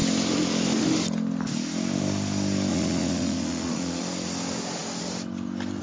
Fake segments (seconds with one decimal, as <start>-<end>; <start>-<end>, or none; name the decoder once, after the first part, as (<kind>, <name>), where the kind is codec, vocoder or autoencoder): 2.7-4.0 (vocoder, Vocos)